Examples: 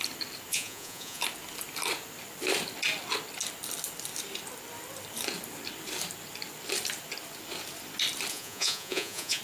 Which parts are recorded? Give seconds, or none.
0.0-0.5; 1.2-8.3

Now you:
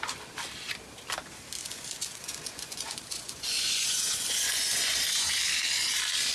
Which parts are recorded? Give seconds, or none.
0.0-1.6; 5.4-6.3

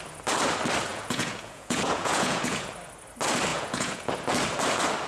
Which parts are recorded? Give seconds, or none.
0.0-0.9; 2.7-3.5; 4.1-5.1